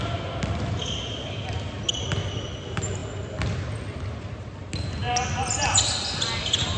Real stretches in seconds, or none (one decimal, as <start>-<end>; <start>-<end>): 0.0-6.8